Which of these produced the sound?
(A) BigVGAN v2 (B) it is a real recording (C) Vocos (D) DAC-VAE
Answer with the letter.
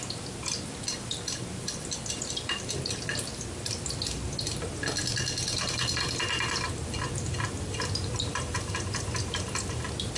A